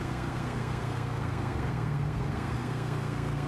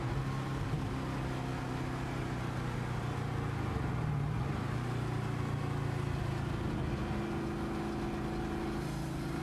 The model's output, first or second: first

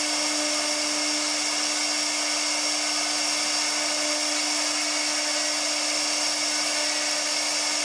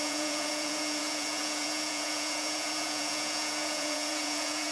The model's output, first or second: second